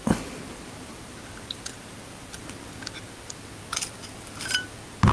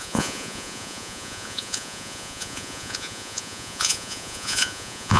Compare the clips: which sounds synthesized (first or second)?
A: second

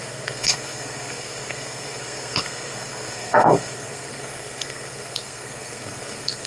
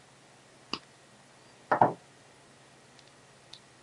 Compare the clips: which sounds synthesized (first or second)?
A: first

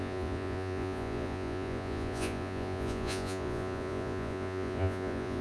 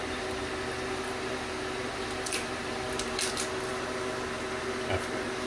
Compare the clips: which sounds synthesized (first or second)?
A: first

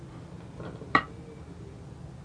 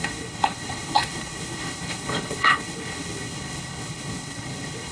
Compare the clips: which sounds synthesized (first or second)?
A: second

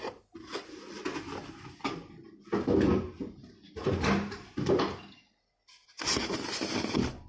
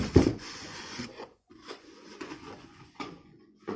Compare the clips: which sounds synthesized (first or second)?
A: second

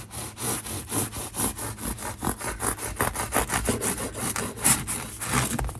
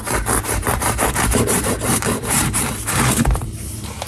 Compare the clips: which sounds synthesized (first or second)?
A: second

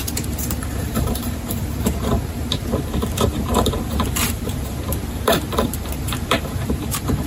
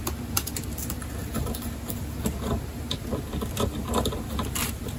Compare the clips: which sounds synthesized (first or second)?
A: first